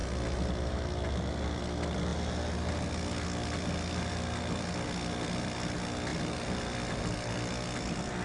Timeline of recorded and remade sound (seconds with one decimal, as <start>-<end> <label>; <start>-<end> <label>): 0.0-6.1 recorded; 6.1-6.9 remade; 6.9-8.2 recorded